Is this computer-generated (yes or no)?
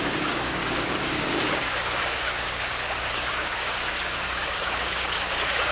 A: yes